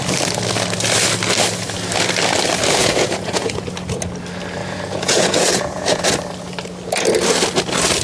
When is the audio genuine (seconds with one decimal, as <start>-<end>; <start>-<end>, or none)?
0.0-2.8; 3.6-4.6; 6.0-8.0